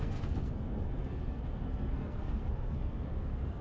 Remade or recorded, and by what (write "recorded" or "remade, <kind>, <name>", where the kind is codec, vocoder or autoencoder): remade, codec, SNAC